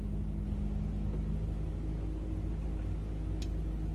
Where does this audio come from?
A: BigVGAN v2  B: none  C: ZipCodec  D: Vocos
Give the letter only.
B